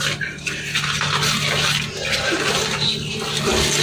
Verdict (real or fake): real